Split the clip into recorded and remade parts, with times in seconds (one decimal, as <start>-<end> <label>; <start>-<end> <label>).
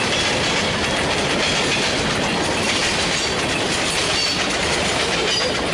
0.0-5.7 recorded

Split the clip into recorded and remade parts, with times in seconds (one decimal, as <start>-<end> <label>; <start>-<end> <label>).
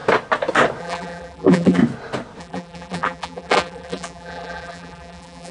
0.0-0.8 recorded; 0.8-1.8 remade; 1.8-2.4 recorded; 2.4-5.5 remade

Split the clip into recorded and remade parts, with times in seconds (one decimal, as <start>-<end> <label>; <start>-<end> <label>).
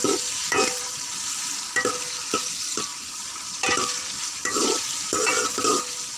0.0-0.4 recorded; 0.4-1.6 remade; 1.6-2.9 recorded; 2.9-5.4 remade; 5.4-6.2 recorded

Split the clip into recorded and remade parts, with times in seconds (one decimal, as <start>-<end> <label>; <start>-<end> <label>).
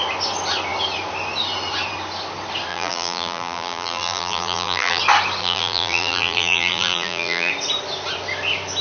0.0-2.7 recorded; 2.7-5.0 remade; 5.0-5.4 recorded; 5.4-7.5 remade; 7.5-8.8 recorded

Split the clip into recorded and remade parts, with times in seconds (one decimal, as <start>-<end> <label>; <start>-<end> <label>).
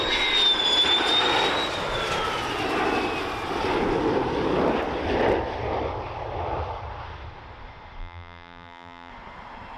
0.0-8.0 recorded; 8.0-9.1 remade; 9.1-9.8 recorded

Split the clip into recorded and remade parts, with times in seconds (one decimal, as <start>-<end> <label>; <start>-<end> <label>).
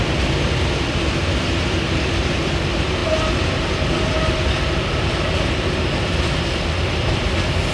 0.0-7.7 recorded